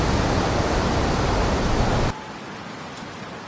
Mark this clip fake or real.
real